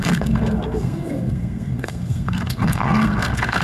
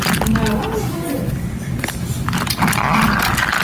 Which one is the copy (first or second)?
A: first